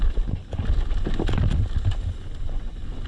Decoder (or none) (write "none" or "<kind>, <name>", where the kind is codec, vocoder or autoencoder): none